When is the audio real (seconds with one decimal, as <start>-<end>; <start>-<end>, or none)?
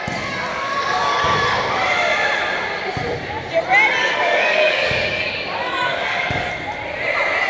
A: 0.0-0.5; 1.6-4.0; 6.5-7.5